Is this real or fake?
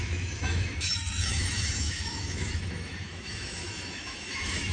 fake